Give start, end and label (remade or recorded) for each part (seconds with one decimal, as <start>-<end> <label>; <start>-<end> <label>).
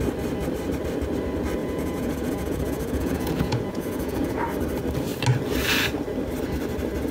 0.0-1.6 recorded; 1.6-4.4 remade; 4.4-7.1 recorded